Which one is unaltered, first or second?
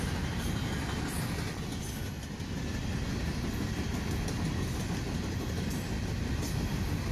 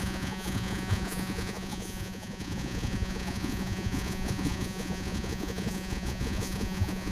first